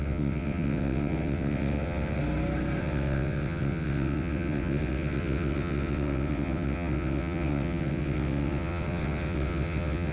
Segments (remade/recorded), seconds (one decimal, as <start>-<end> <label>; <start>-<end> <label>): 0.0-2.2 remade; 2.2-2.8 recorded; 2.8-10.1 remade

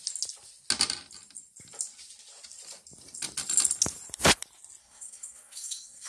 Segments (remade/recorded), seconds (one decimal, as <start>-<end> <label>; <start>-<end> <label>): 0.0-4.8 recorded; 4.8-6.1 remade

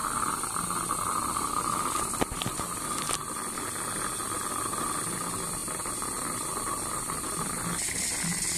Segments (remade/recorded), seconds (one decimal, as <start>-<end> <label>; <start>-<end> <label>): 0.0-5.6 recorded; 5.6-7.6 remade; 7.6-8.6 recorded

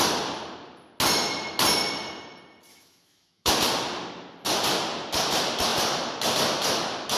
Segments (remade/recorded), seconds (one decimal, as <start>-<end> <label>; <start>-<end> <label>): 0.0-2.7 recorded; 2.7-3.5 remade; 3.5-7.2 recorded

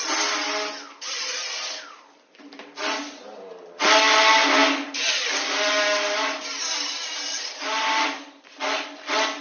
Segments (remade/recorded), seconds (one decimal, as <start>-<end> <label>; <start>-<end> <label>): 0.0-9.4 recorded

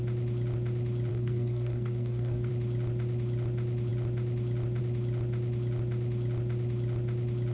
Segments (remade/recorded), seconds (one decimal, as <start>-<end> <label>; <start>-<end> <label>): 0.0-1.1 recorded; 1.1-2.5 remade; 2.5-7.5 recorded

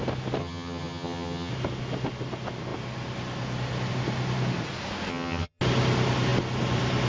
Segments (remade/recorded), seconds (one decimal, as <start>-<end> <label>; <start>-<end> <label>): 0.0-0.4 recorded; 0.4-1.5 remade; 1.5-5.1 recorded; 5.1-5.6 remade; 5.6-7.1 recorded